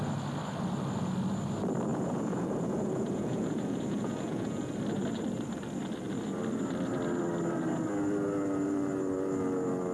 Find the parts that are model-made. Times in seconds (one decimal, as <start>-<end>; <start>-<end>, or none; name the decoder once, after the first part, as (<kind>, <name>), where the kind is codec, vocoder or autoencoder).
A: 1.9-4.7 (vocoder, Vocos)